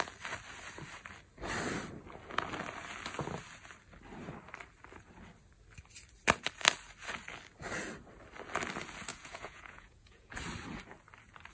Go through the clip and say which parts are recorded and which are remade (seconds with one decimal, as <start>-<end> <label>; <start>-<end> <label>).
0.0-9.1 recorded; 9.1-10.3 remade; 10.3-11.5 recorded